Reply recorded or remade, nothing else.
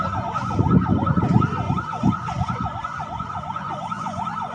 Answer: remade